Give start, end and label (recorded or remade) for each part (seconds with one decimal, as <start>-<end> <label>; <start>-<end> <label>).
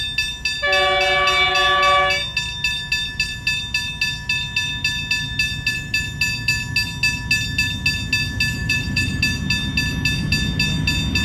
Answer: 0.0-8.6 recorded; 8.6-9.2 remade; 9.2-11.2 recorded